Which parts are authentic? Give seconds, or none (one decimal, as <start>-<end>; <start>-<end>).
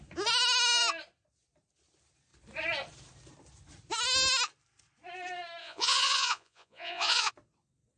0.0-5.6; 7.3-8.0